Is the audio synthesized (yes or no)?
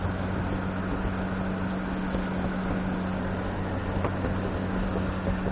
no